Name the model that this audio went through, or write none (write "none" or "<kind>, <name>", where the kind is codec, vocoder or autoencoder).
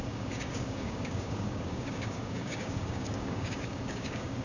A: codec, DAC